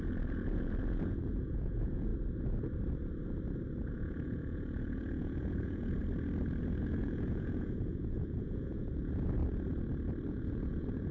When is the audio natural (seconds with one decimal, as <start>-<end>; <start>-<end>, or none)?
2.1-3.9; 6.0-6.8; 9.4-10.3